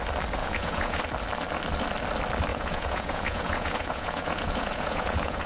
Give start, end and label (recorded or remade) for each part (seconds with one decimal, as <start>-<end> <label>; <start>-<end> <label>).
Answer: 0.0-0.4 recorded; 0.4-1.0 remade; 1.0-2.5 recorded; 2.5-5.5 remade